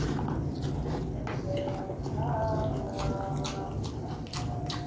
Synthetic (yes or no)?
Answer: no